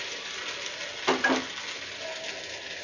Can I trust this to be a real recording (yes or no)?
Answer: yes